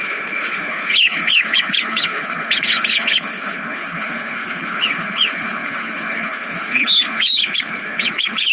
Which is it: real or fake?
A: fake